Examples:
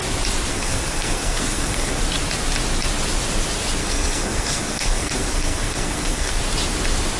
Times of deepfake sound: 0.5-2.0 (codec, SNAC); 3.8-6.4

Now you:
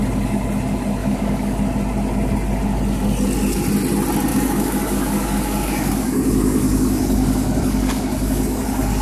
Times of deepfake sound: 1.0-1.6 (codec, DAC); 4.3-9.0

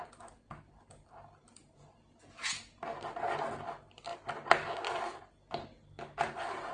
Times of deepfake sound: none

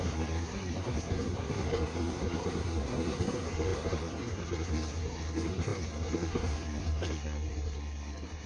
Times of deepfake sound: 0.0-8.5 (codec, SNAC)

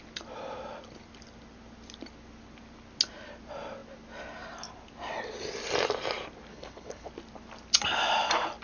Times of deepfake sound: 6.5-7.1 (codec, HILCodec)

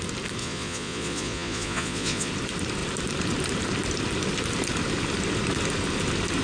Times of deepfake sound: 0.4-2.3 (vocoder, Vocos)

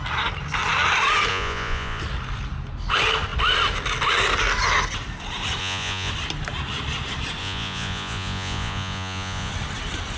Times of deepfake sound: 1.3-2.0 (vocoder, Vocos); 5.6-6.1; 7.4-9.5

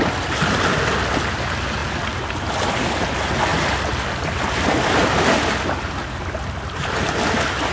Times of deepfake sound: none